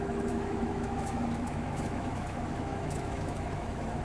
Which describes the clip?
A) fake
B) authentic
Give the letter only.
A